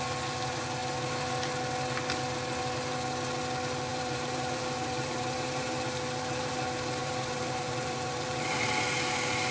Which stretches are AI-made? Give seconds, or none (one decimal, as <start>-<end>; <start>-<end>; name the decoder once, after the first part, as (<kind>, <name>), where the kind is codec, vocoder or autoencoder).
3.9-6.5 (vocoder, BigVGAN v2); 7.0-8.5